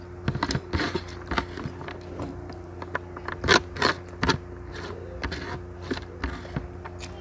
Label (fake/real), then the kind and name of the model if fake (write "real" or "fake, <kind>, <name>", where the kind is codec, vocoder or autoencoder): real